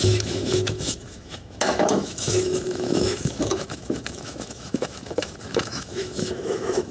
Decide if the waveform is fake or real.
fake